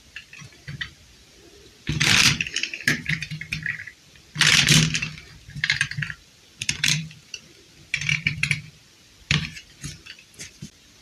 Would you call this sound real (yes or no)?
no